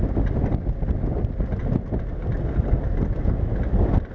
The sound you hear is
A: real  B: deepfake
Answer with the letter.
A